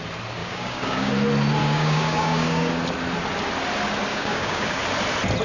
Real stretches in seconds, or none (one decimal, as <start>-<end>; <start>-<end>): 0.0-0.4; 1.1-1.6; 2.7-4.1; 4.8-5.4